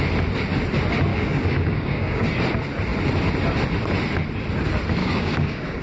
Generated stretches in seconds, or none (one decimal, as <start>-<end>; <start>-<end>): 1.1-2.2; 5.0-5.8